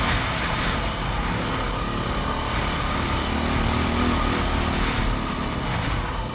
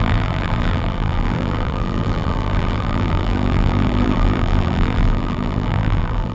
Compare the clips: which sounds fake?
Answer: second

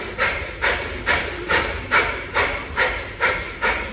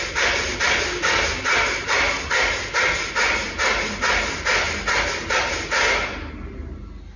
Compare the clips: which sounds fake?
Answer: first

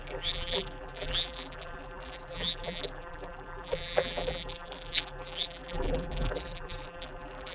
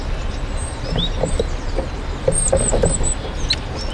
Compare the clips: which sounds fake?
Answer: first